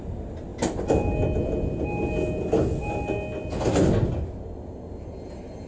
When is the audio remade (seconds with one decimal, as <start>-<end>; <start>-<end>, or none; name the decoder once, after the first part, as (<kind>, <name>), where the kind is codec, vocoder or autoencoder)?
none